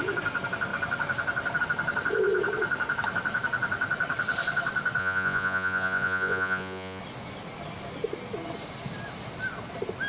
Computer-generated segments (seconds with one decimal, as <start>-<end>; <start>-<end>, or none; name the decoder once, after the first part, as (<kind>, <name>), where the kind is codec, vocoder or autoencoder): 5.0-7.0 (vocoder, Vocos)